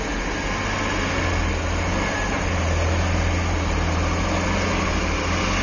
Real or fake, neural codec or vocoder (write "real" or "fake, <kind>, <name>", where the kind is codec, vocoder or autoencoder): real